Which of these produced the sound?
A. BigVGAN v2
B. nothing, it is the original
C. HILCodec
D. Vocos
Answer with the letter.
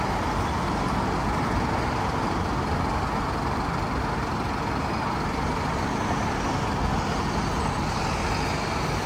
B